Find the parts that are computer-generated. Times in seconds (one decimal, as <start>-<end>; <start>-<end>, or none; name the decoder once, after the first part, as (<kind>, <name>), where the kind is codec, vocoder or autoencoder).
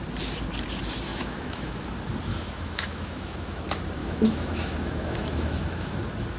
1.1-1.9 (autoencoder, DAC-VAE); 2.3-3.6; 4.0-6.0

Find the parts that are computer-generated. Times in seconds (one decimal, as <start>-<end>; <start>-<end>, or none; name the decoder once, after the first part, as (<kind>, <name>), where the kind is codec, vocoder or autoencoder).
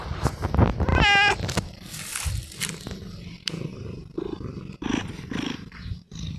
none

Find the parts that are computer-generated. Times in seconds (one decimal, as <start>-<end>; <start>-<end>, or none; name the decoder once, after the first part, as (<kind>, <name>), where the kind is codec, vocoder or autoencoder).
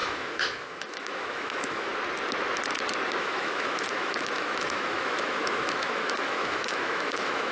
0.0-1.9 (autoencoder, DAC-VAE); 3.2-7.5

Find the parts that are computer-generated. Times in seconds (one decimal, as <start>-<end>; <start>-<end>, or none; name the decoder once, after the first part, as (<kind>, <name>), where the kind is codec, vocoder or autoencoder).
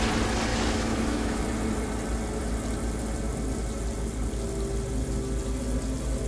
0.5-1.4 (autoencoder, DAC-VAE)